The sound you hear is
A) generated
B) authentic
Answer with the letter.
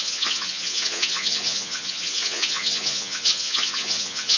A